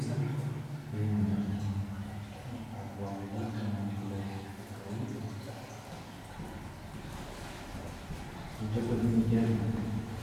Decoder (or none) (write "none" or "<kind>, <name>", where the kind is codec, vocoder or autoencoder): none